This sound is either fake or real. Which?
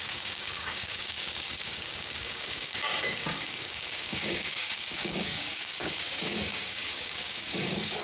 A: fake